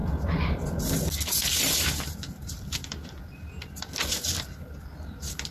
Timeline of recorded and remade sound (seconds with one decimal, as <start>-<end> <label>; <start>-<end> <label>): 0.0-1.0 remade; 1.0-1.5 recorded; 1.5-4.8 remade; 4.8-5.5 recorded